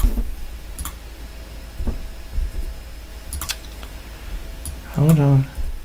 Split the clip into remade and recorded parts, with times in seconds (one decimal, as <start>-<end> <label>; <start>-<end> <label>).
0.0-5.8 recorded